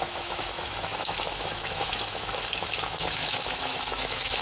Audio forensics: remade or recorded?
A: remade